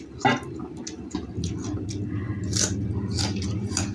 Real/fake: real